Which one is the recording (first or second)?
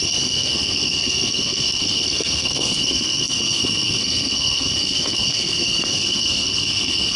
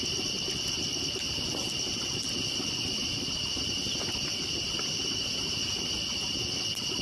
second